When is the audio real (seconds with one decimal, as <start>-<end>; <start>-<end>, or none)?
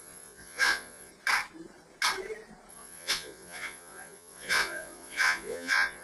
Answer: 1.1-2.7